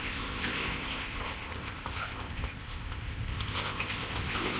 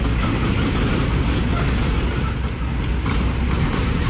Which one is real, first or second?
second